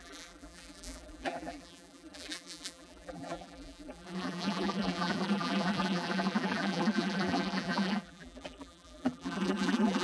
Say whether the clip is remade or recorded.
remade